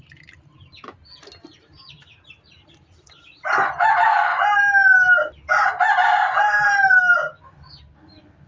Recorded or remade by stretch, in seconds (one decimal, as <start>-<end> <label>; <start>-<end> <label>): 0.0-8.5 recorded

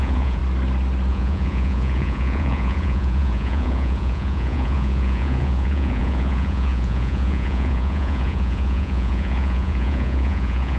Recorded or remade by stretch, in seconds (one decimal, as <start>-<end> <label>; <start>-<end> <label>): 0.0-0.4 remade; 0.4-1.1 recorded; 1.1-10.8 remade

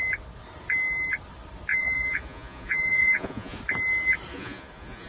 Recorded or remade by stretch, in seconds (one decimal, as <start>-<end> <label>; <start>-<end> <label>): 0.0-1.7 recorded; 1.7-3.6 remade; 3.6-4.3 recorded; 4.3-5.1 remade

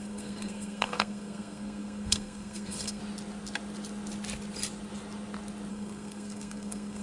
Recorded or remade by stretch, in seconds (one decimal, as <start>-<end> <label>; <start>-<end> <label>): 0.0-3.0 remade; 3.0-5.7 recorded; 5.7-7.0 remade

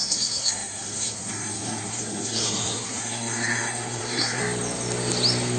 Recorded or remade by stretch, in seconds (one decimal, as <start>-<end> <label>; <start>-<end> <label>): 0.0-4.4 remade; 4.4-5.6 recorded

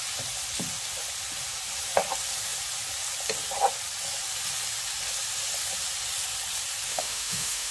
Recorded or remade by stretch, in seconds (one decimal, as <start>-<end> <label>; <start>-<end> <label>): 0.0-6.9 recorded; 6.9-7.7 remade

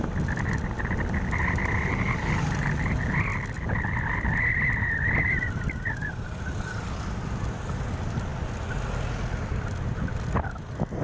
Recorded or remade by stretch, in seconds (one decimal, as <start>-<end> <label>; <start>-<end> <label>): 0.0-11.0 recorded

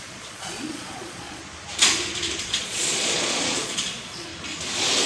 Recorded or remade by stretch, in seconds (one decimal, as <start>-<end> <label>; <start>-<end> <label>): 0.0-1.4 remade; 1.4-2.4 recorded; 2.4-4.3 remade; 4.3-5.1 recorded